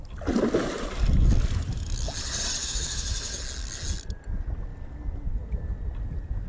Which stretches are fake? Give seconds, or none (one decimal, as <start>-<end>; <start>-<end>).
2.6-3.3